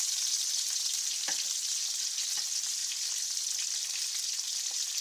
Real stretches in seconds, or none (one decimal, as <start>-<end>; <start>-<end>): 0.0-5.0